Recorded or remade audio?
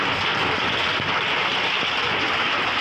recorded